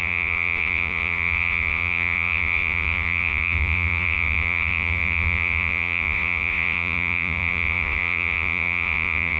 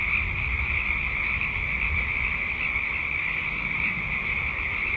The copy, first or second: first